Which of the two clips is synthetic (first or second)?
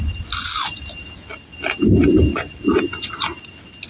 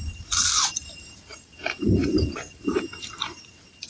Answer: second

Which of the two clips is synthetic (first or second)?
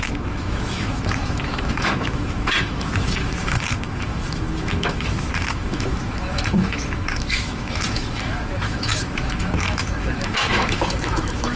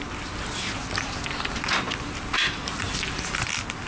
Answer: first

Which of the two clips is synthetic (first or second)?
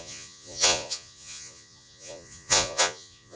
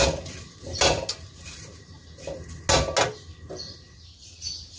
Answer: first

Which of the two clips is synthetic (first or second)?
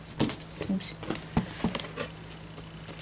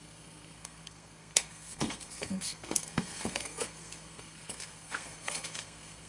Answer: second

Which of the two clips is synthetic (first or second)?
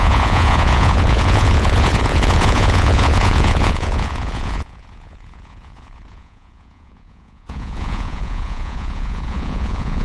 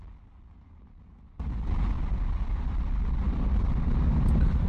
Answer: first